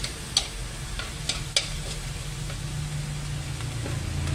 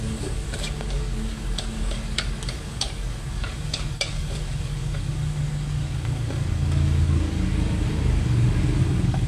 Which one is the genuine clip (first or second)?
first